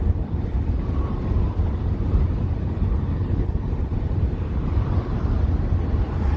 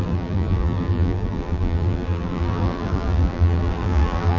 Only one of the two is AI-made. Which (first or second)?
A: second